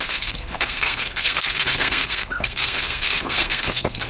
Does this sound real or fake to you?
fake